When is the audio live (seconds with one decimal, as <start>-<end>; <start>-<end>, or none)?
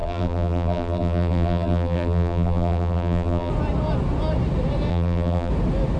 3.5-4.9; 5.5-6.0